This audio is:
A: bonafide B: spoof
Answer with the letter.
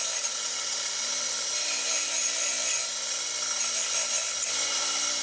A